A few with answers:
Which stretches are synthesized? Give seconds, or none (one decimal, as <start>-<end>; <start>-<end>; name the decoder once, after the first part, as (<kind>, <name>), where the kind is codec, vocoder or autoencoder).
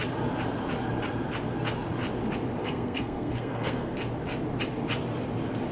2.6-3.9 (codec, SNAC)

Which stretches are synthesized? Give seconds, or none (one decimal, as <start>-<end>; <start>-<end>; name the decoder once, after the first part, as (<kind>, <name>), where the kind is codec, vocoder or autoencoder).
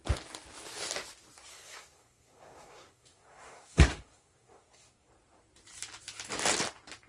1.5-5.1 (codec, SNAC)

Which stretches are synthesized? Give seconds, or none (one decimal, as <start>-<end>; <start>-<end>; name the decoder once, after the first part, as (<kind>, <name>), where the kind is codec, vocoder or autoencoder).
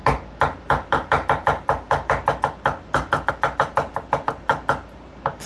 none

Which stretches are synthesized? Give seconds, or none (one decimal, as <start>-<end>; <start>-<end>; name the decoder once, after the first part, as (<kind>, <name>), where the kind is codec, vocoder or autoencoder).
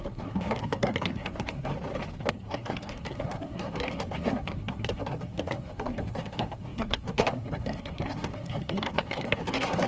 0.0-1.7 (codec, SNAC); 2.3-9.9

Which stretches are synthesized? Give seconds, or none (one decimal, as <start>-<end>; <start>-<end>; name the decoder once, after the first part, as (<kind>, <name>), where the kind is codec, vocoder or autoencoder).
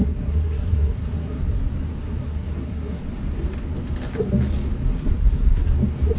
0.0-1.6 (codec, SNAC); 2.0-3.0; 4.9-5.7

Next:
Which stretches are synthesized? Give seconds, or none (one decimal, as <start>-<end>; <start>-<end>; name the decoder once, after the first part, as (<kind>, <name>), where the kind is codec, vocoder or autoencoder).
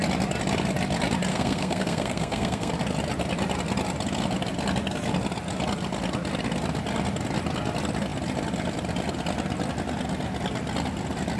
1.3-2.7 (codec, SNAC)